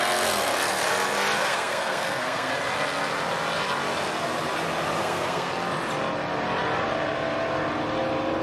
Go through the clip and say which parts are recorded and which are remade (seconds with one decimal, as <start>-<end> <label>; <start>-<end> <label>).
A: 0.0-1.4 recorded; 1.4-2.5 remade; 2.5-5.0 recorded; 5.0-5.5 remade; 5.5-8.4 recorded